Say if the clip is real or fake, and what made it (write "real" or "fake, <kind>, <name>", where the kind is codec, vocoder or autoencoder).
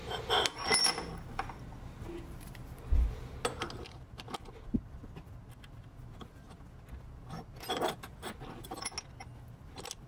real